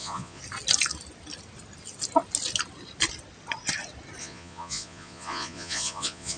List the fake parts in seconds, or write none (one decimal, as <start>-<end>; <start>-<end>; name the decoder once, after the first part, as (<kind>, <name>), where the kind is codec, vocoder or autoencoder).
0.0-0.4 (vocoder, Vocos); 4.2-6.4